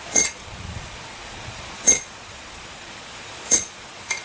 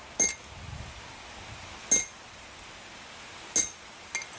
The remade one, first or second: first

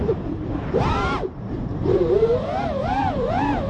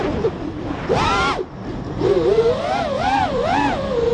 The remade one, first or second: first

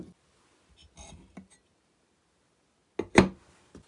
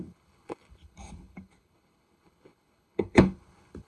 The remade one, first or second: second